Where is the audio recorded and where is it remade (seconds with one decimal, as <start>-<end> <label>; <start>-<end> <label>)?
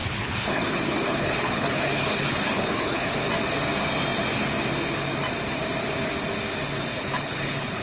0.0-3.2 remade; 3.2-6.9 recorded; 6.9-7.8 remade